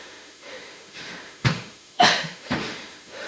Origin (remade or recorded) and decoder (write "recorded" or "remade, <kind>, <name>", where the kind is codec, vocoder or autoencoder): remade, autoencoder, DAC-VAE